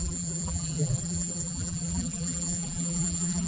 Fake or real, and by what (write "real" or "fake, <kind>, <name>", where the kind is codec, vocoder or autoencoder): fake, vocoder, BigVGAN v2